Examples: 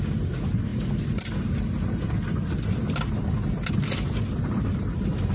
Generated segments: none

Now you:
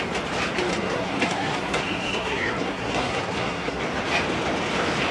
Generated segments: 0.7-3.8 (codec, SNAC)

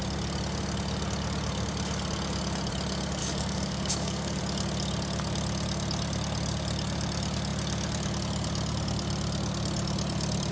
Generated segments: 3.2-4.4 (codec, DAC)

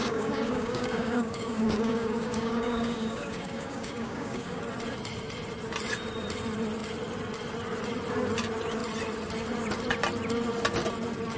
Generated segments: 0.0-4.6 (codec, DAC)